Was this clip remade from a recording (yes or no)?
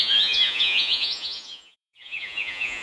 yes